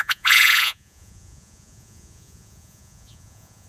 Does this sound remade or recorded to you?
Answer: remade